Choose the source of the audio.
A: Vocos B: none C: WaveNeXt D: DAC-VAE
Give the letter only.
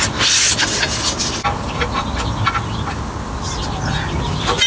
B